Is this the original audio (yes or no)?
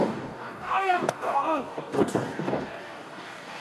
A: no